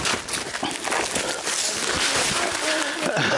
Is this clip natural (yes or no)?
yes